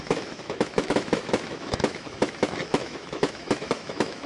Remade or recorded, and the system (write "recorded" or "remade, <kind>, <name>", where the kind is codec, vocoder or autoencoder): remade, autoencoder, DAC-VAE